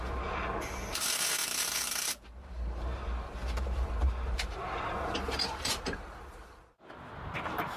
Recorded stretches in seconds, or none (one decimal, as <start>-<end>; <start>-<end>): 0.0-1.4; 4.5-7.8